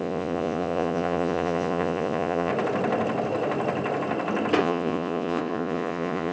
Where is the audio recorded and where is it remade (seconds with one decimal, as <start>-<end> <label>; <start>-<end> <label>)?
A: 0.0-2.5 remade; 2.5-4.6 recorded; 4.6-6.3 remade